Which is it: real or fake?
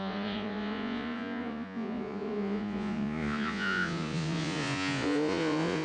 fake